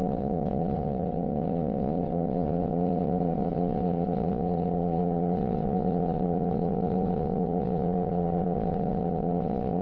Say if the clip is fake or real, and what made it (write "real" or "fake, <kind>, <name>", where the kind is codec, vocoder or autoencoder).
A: fake, vocoder, Vocos